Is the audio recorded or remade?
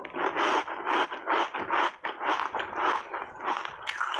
recorded